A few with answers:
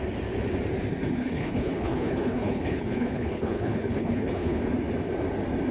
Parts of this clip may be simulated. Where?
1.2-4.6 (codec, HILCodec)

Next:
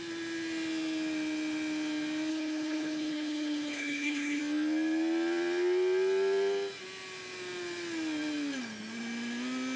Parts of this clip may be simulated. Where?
2.3-4.4 (codec, HILCodec)

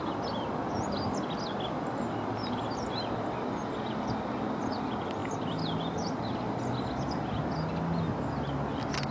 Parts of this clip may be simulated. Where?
none

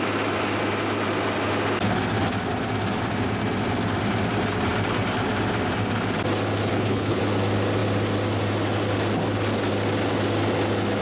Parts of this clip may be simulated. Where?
6.7-7.2 (codec, HILCodec)

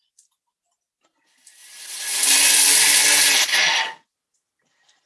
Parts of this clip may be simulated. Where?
none